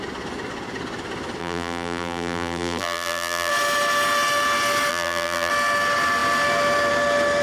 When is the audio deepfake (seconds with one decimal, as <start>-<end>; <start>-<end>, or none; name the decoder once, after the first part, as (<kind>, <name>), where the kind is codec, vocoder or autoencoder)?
1.4-3.5 (vocoder, BigVGAN v2); 4.9-5.5